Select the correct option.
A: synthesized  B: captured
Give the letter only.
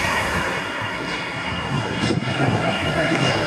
A